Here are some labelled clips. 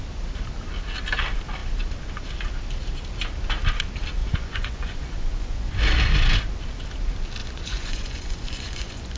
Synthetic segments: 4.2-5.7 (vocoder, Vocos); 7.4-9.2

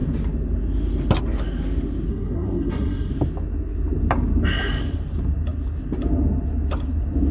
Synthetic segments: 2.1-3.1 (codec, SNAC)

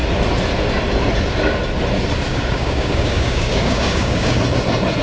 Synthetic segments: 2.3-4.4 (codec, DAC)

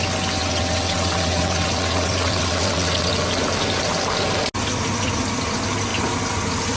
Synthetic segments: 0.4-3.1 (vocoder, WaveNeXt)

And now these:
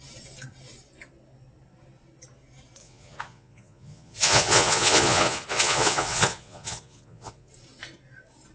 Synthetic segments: 2.8-7.5 (vocoder, Vocos)

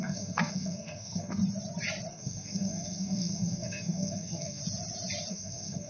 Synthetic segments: 0.0-1.4 (codec, SNAC); 2.1-4.6; 5.3-5.9

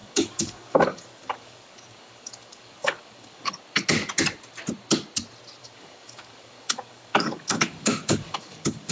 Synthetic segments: 0.0-3.5 (codec, DAC); 5.6-8.9